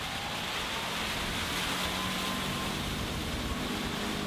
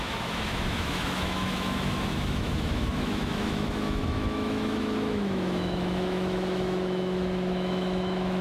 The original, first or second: first